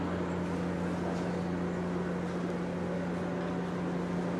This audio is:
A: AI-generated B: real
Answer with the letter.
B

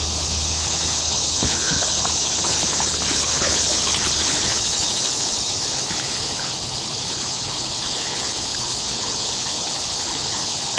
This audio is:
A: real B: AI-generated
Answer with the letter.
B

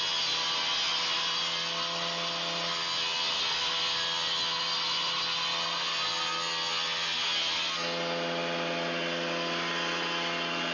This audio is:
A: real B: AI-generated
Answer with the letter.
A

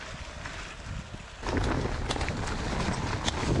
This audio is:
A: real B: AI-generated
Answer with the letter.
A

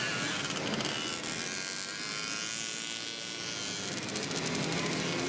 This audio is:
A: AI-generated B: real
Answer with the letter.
B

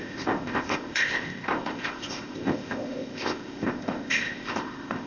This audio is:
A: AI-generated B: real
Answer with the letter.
A